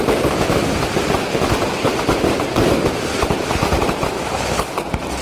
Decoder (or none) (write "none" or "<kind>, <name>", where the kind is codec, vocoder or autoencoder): vocoder, BigVGAN v2